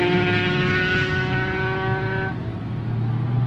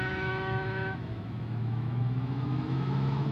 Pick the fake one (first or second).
second